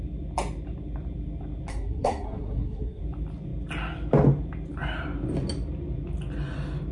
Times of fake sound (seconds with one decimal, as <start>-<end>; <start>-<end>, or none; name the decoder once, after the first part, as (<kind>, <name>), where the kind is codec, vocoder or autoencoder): 1.7-3.0 (codec, SNAC)